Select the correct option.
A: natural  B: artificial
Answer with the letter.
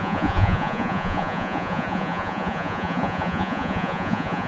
B